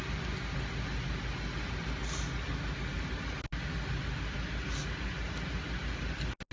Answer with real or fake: real